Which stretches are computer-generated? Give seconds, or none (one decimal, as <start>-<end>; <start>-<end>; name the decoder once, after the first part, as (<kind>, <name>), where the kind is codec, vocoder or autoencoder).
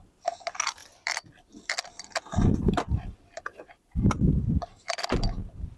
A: 0.8-4.3 (vocoder, BigVGAN v2)